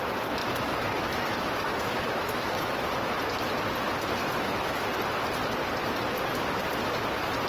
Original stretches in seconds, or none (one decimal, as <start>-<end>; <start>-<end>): 0.0-0.4; 2.9-4.2; 4.9-7.5